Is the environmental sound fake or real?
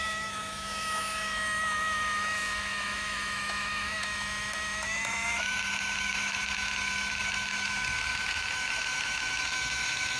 fake